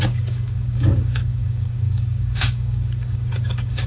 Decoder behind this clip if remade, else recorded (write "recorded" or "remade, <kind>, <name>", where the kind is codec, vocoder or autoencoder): remade, codec, DAC